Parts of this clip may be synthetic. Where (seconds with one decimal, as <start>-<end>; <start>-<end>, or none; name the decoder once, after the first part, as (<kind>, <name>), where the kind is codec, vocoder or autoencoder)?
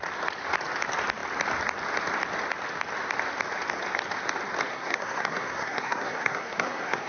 4.7-7.1 (codec, SNAC)